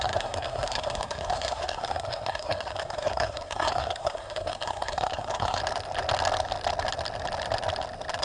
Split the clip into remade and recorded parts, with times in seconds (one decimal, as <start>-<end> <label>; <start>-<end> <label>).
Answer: 0.0-5.6 remade; 5.6-8.2 recorded